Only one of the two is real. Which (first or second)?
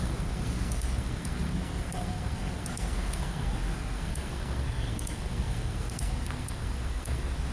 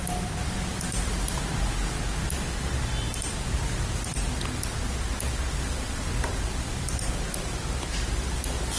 second